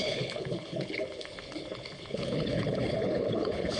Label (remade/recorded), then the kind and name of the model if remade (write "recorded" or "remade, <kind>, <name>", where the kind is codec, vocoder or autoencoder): remade, codec, HILCodec